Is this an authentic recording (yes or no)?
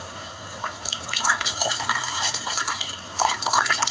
no